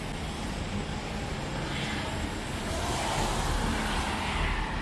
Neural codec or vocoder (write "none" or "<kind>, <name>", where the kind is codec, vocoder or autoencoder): none